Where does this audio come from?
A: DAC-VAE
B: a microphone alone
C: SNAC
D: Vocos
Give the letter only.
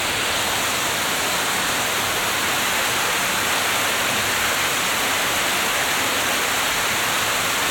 B